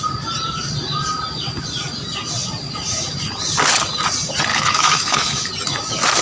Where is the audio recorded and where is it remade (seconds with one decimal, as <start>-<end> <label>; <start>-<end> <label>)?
0.0-4.5 recorded; 4.5-5.5 remade; 5.5-6.2 recorded